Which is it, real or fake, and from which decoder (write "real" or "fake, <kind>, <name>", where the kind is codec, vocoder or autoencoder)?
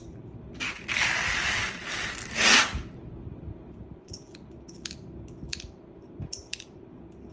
real